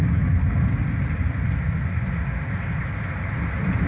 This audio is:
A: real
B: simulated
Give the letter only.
A